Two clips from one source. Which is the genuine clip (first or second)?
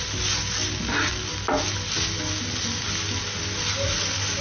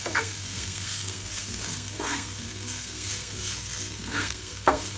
first